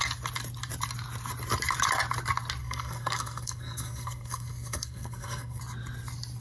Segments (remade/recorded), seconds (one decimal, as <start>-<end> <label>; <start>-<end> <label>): 0.0-2.6 recorded; 2.6-5.6 remade; 5.6-6.4 recorded